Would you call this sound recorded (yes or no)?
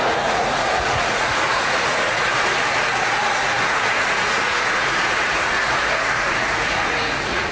no